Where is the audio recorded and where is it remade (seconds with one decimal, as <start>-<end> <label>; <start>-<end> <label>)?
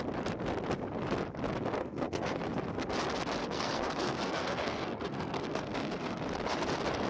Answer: 0.0-1.8 recorded; 1.8-2.4 remade; 2.4-3.4 recorded; 3.4-6.2 remade; 6.2-7.1 recorded